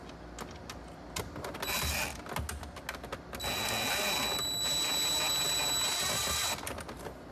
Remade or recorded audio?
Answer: recorded